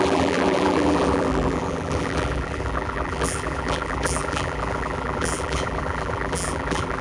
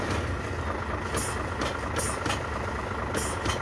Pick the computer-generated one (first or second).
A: first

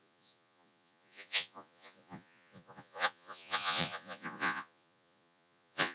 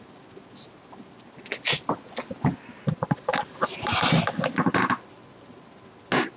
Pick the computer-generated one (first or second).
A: first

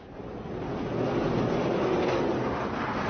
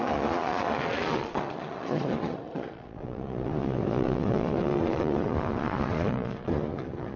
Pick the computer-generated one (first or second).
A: second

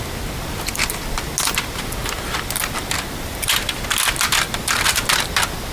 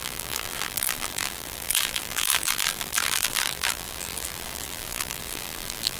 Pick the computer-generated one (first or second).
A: second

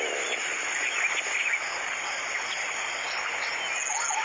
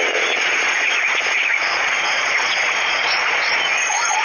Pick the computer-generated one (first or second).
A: second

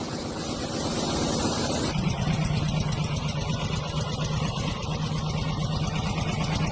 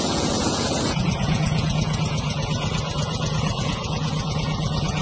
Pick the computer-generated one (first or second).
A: second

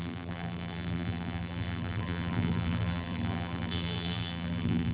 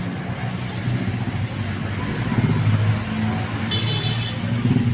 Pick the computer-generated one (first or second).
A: first